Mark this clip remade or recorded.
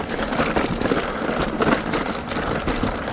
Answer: recorded